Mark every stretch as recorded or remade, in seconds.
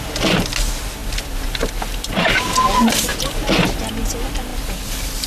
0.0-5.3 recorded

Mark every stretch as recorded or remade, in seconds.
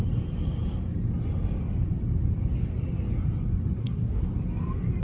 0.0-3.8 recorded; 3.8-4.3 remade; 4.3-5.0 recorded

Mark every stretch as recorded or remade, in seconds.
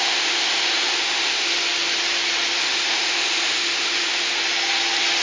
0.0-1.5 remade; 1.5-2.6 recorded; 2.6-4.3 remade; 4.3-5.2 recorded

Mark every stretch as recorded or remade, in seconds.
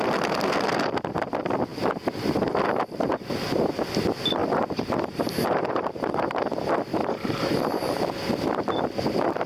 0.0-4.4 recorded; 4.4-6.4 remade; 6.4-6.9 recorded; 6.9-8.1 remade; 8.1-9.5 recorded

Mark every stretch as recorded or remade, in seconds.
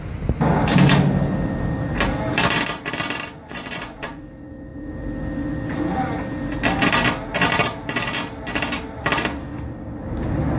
0.0-3.4 recorded; 3.4-4.2 remade; 4.2-10.6 recorded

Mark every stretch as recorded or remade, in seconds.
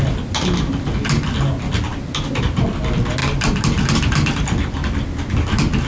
0.0-5.9 recorded